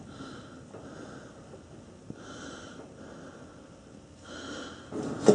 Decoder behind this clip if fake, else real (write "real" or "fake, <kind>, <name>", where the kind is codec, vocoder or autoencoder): real